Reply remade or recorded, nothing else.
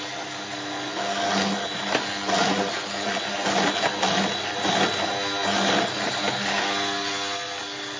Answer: recorded